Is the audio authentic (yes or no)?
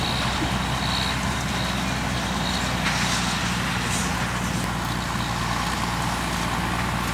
yes